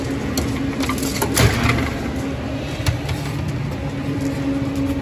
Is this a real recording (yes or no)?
yes